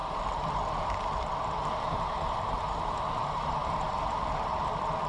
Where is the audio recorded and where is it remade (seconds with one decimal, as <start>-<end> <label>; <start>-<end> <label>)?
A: 0.0-0.5 remade; 0.5-1.6 recorded; 1.6-3.9 remade; 3.9-5.1 recorded